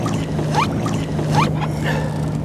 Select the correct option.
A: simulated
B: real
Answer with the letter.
B